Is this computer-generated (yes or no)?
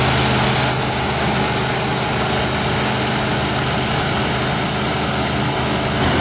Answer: no